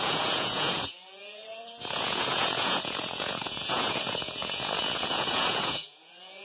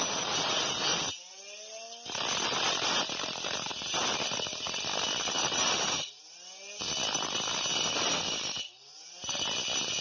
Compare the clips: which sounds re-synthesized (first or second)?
first